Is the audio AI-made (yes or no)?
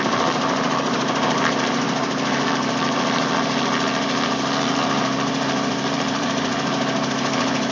yes